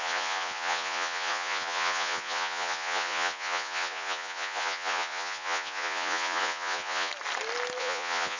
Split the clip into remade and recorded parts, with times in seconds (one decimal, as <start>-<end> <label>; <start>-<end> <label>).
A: 0.0-7.1 remade; 7.1-7.8 recorded; 7.8-8.4 remade